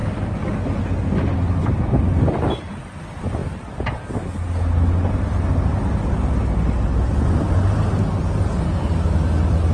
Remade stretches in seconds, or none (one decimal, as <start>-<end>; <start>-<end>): 0.0-0.8